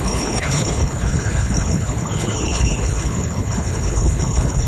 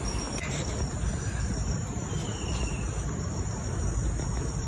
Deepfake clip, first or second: first